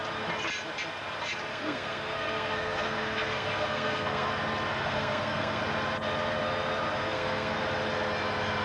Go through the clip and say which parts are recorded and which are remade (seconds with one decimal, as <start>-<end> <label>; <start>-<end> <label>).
0.0-1.5 recorded; 1.5-4.3 remade; 4.3-4.7 recorded; 4.7-5.6 remade; 5.6-7.0 recorded; 7.0-7.6 remade; 7.6-8.6 recorded